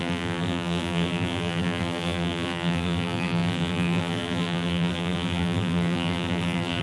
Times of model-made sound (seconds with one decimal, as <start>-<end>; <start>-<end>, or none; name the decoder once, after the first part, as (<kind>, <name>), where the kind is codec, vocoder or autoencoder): 0.0-6.8 (vocoder, BigVGAN v2)